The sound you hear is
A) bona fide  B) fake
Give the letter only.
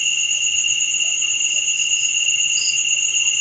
A